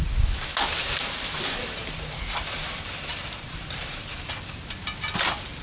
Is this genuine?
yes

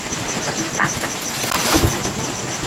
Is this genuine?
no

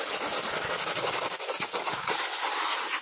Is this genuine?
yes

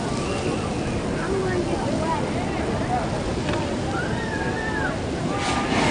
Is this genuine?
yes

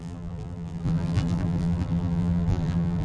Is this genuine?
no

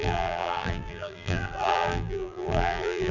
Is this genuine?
no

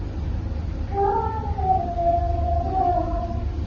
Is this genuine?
yes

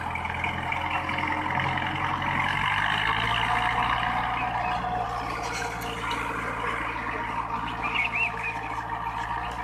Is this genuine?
yes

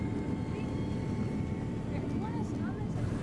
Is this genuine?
no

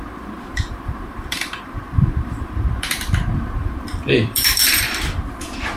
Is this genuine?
no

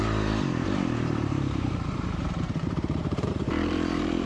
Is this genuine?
no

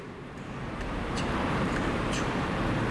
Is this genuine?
no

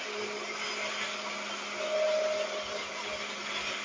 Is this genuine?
yes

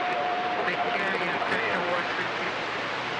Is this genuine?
no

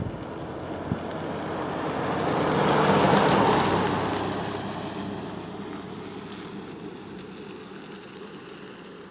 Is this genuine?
yes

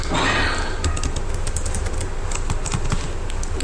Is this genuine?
yes